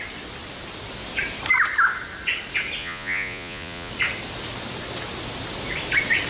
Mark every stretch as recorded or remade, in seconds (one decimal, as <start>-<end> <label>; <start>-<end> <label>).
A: 0.0-2.8 recorded; 2.8-3.9 remade; 3.9-6.3 recorded